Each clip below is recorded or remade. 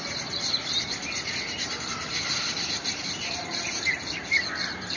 remade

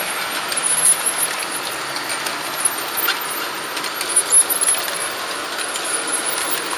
recorded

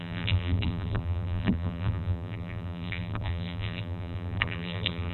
remade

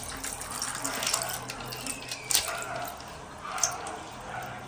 recorded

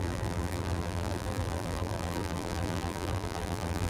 remade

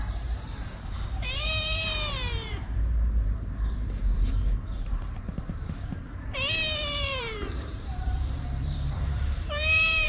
remade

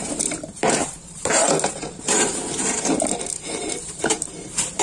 remade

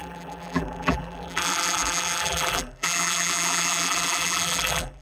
remade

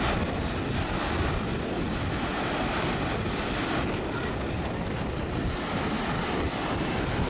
recorded